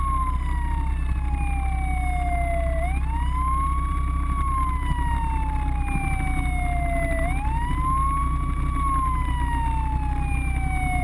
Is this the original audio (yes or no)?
yes